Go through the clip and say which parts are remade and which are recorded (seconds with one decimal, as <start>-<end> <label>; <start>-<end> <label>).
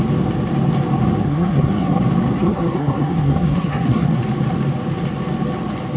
0.0-1.2 recorded; 1.2-2.0 remade; 2.0-2.4 recorded; 2.4-4.2 remade; 4.2-6.0 recorded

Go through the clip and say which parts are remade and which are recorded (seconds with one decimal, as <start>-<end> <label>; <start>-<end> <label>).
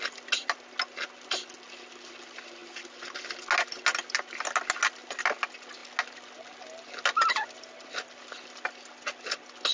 0.0-9.7 recorded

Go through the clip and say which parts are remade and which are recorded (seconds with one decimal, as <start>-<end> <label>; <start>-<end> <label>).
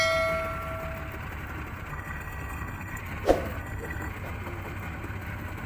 0.0-1.9 recorded; 1.9-3.0 remade; 3.0-3.6 recorded; 3.6-4.1 remade; 4.1-5.7 recorded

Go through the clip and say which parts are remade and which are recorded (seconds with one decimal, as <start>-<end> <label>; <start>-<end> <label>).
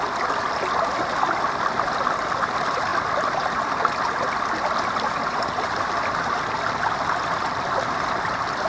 0.0-8.7 recorded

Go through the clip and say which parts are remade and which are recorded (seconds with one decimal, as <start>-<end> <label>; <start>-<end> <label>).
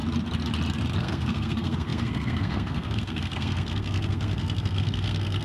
0.0-1.0 recorded; 1.0-5.4 remade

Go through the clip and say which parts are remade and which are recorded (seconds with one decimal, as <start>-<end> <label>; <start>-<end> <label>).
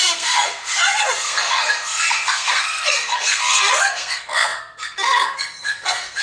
0.0-6.2 remade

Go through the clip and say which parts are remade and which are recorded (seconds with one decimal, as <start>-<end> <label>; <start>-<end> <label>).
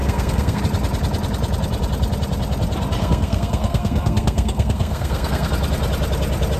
0.0-0.6 remade; 0.6-3.0 recorded; 3.0-5.5 remade; 5.5-6.6 recorded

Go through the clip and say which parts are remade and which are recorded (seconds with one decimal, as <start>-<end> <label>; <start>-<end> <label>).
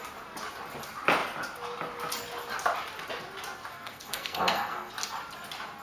0.0-3.7 recorded; 3.7-4.9 remade; 4.9-5.8 recorded